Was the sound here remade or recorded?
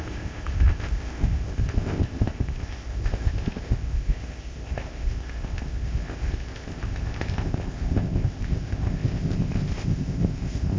remade